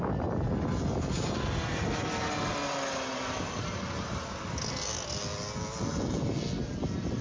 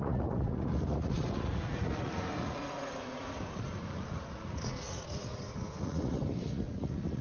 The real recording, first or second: first